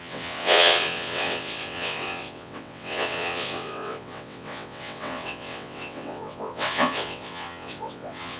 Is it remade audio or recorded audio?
remade